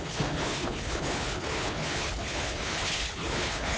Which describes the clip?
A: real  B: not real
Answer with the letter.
B